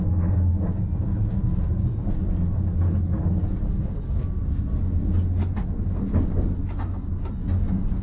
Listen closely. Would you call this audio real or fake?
real